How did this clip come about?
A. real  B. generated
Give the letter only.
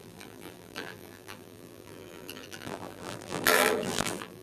B